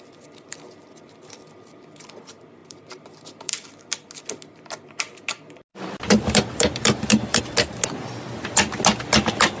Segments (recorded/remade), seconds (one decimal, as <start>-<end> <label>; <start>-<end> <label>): 0.0-2.6 recorded; 2.6-3.8 remade; 3.8-5.7 recorded; 5.7-7.4 remade; 7.4-9.6 recorded